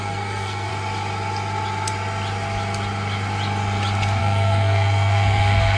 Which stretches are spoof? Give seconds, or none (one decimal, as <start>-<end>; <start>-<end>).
0.0-0.7; 4.2-5.8